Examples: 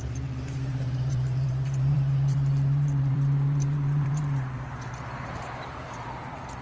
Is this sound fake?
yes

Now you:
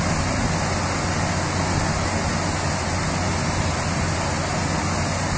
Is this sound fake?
no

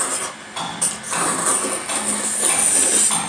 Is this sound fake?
yes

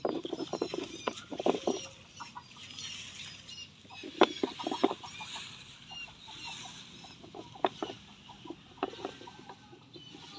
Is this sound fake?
no